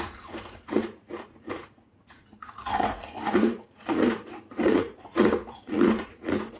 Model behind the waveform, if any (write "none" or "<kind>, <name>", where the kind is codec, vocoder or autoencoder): vocoder, Vocos